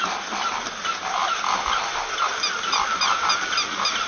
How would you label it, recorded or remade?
recorded